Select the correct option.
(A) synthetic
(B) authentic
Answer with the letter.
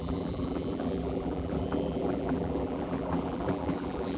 A